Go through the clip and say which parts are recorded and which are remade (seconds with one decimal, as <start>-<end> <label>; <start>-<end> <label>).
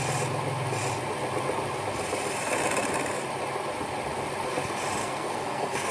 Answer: 0.0-5.0 recorded; 5.0-5.9 remade